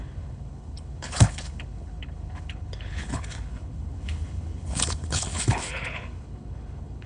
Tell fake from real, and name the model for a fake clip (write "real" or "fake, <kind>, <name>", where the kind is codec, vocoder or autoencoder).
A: fake, codec, HILCodec